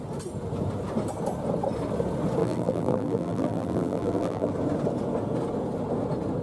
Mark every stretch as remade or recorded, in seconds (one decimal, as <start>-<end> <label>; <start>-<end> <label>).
0.0-2.4 recorded; 2.4-4.5 remade; 4.5-6.4 recorded

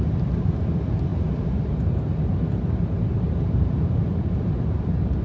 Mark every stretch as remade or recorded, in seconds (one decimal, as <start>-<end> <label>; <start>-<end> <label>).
0.0-5.2 remade

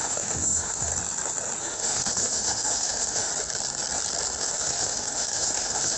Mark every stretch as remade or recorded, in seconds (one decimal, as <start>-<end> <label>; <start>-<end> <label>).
0.0-0.9 remade; 0.9-1.6 recorded; 1.6-3.3 remade; 3.3-4.4 recorded; 4.4-6.0 remade

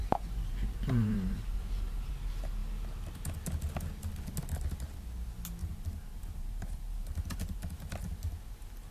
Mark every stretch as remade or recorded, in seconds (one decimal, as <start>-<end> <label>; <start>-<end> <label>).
0.0-2.1 remade; 2.1-5.6 recorded; 5.6-7.2 remade; 7.2-8.9 recorded

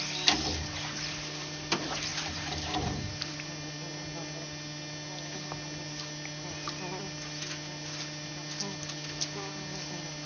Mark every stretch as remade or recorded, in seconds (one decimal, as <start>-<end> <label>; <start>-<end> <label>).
0.0-2.1 recorded; 2.1-3.1 remade; 3.1-10.3 recorded

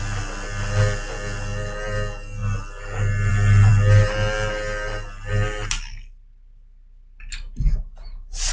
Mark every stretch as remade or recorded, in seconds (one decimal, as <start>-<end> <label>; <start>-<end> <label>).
0.0-8.5 recorded

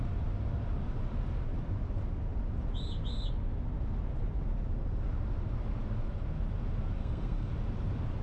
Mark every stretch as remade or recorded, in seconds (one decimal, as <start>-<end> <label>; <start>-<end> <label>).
0.0-7.0 recorded; 7.0-7.5 remade; 7.5-8.2 recorded